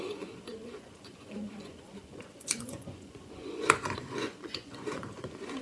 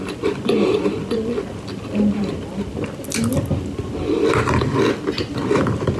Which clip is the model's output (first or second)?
first